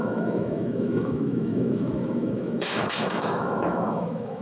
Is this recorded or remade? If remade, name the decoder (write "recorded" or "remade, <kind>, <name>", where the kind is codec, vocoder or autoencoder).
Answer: remade, autoencoder, DAC-VAE